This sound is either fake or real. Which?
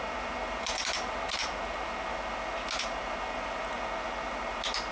real